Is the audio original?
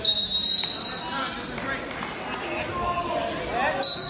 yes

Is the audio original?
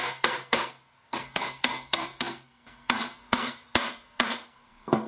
no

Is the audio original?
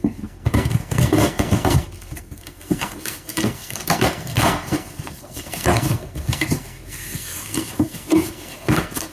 no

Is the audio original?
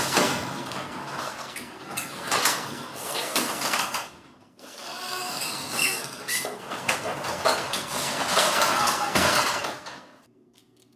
no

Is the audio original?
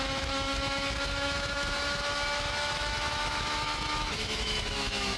no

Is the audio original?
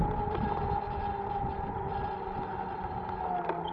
yes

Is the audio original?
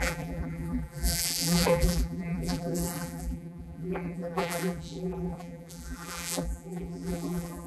no